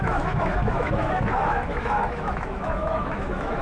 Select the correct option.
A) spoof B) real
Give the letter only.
A